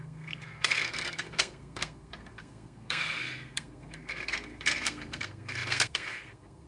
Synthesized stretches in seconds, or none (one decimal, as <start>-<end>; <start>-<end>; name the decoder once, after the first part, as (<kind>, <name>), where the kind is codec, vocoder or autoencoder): 0.0-6.7 (codec, SNAC)